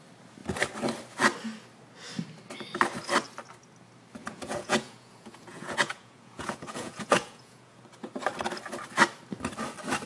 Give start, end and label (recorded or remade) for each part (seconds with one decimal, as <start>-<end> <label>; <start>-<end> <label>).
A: 0.0-4.2 recorded; 4.2-7.8 remade; 7.8-10.1 recorded